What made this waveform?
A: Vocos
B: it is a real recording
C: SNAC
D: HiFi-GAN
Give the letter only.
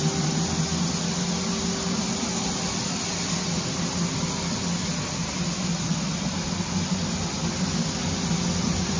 B